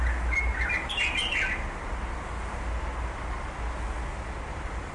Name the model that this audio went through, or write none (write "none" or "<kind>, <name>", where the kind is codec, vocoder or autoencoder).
none